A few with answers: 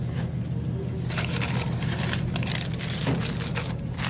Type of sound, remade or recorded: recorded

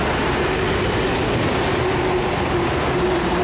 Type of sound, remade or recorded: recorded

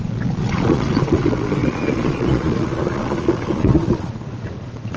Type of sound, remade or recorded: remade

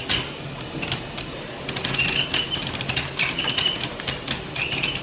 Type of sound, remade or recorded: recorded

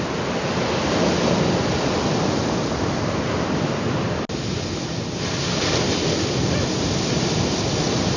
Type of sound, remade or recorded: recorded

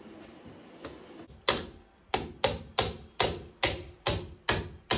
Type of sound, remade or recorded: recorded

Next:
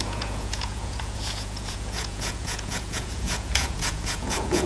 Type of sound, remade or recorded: remade